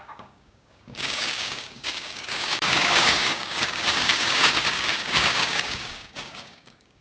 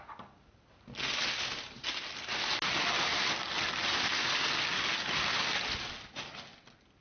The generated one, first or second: first